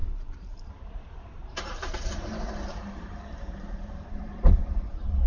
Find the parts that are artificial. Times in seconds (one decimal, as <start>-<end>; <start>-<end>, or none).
0.0-0.7; 1.4-4.6